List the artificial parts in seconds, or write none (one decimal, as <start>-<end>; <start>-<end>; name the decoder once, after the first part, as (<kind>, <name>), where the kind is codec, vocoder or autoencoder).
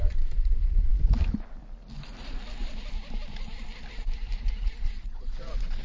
0.0-0.9 (vocoder, Vocos); 4.4-5.8